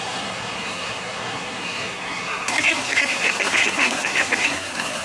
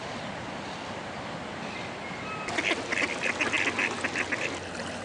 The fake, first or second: first